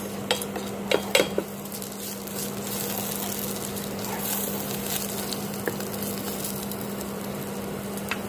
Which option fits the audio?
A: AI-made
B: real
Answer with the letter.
B